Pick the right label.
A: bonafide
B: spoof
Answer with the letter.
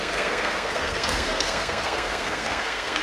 B